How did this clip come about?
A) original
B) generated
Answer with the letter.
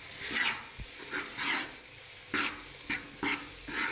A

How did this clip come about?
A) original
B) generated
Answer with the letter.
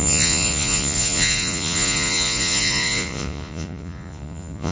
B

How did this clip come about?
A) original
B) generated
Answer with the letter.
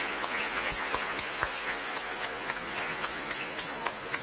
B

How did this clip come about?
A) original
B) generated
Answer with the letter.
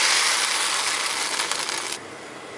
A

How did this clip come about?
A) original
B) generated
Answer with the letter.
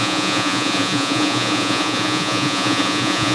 B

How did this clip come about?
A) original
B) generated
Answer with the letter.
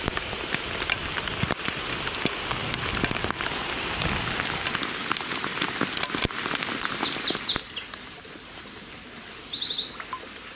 A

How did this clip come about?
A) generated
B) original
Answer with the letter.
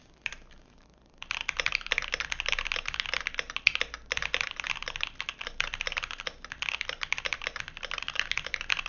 B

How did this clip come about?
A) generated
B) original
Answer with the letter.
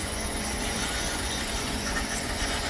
A